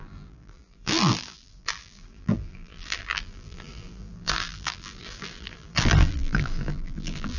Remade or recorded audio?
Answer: remade